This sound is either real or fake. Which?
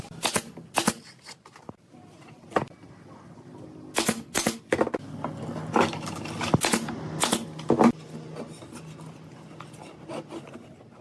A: real